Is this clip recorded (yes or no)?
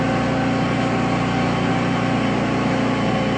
yes